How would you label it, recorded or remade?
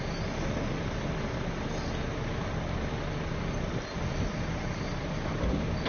recorded